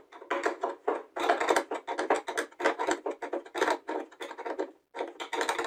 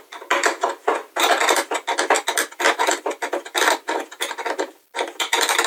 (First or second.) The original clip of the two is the first